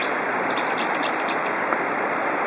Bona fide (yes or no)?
no